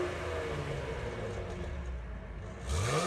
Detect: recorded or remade recorded